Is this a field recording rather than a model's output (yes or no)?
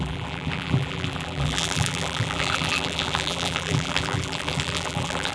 no